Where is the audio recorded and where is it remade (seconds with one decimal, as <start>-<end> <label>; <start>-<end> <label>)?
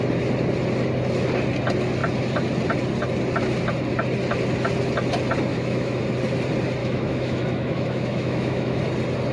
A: 0.0-5.5 recorded; 5.5-6.0 remade; 6.0-6.8 recorded; 6.8-8.8 remade; 8.8-9.3 recorded